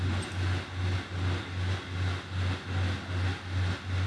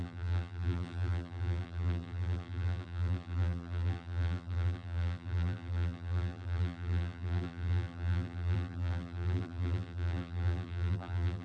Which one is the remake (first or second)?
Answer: second